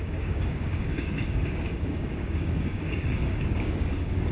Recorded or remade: remade